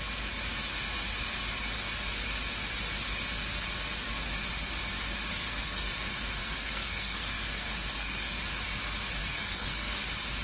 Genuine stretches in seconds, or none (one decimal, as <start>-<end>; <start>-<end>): 0.0-5.3; 5.9-6.4; 8.4-9.2; 10.0-10.4